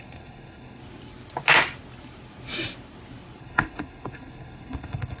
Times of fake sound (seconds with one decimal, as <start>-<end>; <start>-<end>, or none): 0.0-0.8; 3.4-5.2